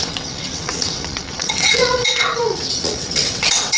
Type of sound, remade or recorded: remade